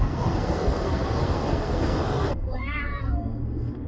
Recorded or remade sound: remade